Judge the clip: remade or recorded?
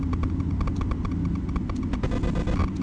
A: recorded